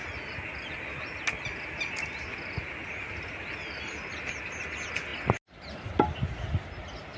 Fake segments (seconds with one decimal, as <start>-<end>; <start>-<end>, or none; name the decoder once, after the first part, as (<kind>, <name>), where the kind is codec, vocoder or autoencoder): none